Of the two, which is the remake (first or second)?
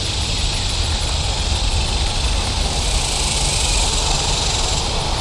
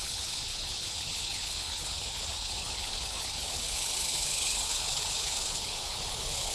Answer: second